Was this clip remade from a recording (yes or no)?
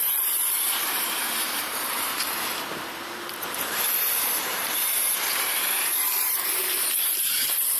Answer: yes